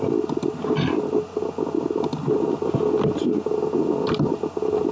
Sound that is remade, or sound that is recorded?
recorded